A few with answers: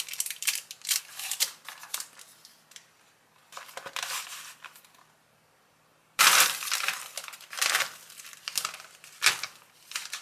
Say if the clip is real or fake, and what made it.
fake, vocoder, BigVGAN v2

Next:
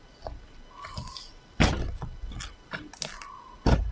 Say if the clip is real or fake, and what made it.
real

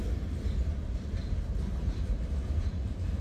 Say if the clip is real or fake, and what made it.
fake, vocoder, BigVGAN v2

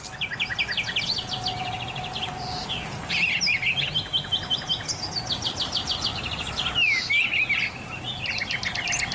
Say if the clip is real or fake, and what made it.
real